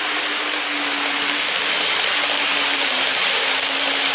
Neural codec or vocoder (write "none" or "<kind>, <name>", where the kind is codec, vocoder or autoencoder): none